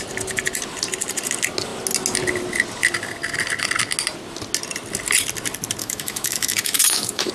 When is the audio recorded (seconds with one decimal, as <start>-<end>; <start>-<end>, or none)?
0.0-5.8